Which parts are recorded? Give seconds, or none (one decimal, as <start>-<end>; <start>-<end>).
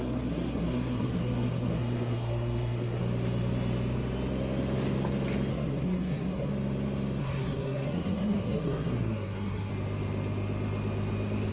3.0-5.5; 6.5-7.2; 9.7-11.5